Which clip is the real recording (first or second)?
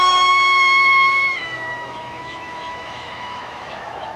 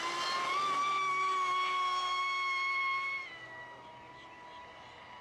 second